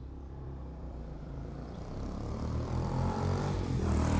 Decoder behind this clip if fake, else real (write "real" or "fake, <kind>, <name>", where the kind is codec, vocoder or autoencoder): fake, vocoder, BigVGAN v2